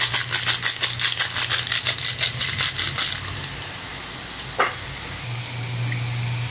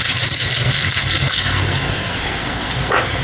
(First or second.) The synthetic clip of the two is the second